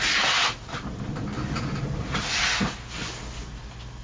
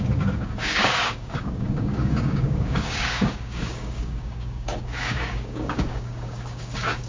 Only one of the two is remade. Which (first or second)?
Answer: second